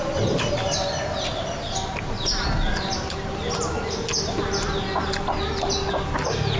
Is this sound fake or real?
real